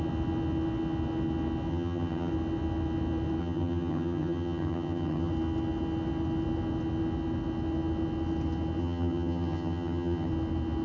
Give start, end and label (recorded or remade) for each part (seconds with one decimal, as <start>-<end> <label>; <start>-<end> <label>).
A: 0.0-1.7 recorded; 1.7-2.3 remade; 2.3-3.4 recorded; 3.4-5.3 remade; 5.3-8.8 recorded; 8.8-10.3 remade; 10.3-10.8 recorded